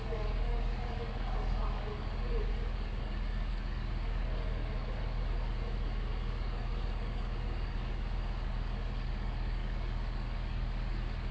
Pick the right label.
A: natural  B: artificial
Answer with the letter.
B